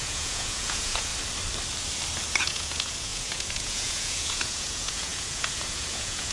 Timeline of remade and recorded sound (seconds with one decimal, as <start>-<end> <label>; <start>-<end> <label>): 0.0-1.1 remade; 1.1-2.4 recorded; 2.4-6.3 remade